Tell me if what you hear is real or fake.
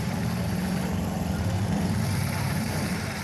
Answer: fake